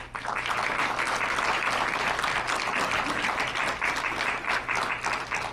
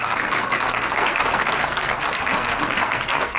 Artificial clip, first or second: second